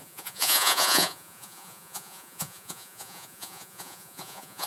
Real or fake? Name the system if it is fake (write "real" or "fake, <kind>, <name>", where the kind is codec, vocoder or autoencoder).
fake, vocoder, Vocos